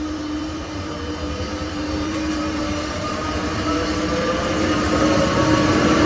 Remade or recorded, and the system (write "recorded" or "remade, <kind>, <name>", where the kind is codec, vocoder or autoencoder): remade, vocoder, BigVGAN v2